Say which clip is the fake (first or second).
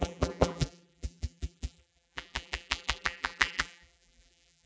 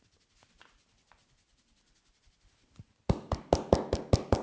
first